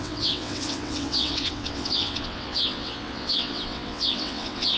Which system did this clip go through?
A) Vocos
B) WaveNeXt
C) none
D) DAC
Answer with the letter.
B